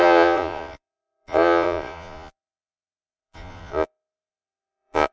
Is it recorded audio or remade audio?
remade